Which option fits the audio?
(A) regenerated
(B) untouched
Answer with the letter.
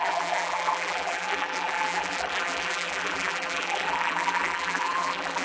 A